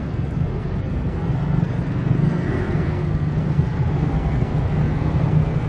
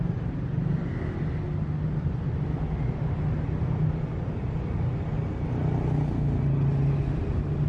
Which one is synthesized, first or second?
first